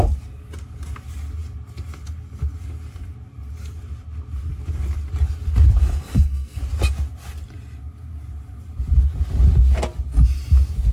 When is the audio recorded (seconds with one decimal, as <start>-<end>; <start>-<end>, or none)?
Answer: 0.0-5.8; 6.6-10.9